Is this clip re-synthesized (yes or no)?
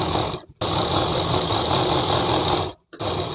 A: no